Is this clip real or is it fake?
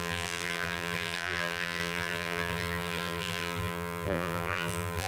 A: fake